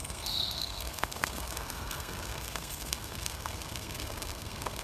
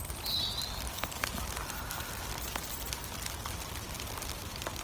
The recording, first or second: second